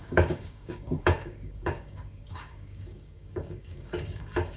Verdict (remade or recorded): remade